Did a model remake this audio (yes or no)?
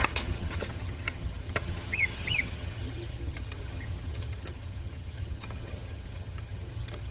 yes